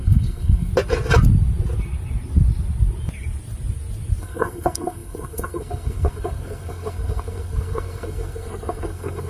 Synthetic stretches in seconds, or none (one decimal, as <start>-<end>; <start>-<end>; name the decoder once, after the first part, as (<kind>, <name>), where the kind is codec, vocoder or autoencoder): 0.0-0.7 (codec, SNAC); 4.2-9.3